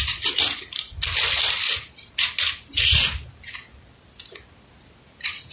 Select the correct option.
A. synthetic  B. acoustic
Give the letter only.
B